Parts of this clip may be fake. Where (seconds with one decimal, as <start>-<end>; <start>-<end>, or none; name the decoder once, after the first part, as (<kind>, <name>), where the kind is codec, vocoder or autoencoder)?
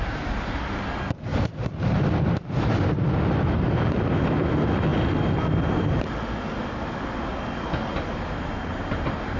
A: 1.3-3.0 (vocoder, BigVGAN v2); 4.9-7.6